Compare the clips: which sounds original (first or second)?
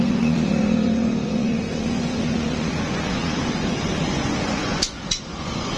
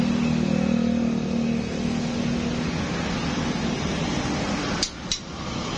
second